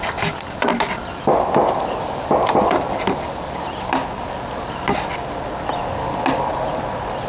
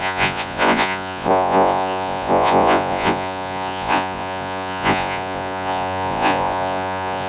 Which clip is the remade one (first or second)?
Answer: second